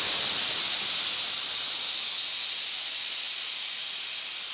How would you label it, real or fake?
real